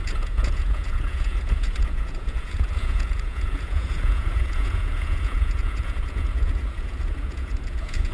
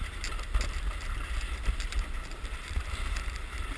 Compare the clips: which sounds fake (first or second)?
first